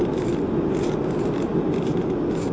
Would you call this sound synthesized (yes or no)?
no